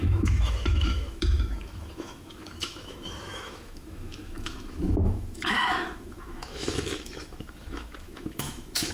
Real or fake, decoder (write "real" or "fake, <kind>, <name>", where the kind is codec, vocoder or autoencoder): fake, autoencoder, DAC-VAE